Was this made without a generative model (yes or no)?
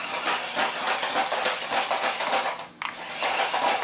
yes